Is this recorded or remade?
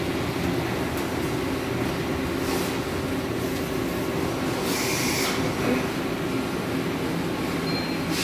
recorded